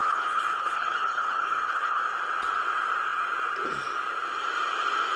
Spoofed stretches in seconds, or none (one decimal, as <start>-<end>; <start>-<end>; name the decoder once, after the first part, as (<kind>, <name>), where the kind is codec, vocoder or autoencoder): 0.0-2.0 (codec, HILCodec)